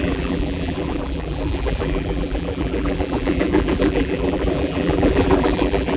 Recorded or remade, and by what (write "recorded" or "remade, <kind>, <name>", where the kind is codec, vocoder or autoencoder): remade, vocoder, BigVGAN v2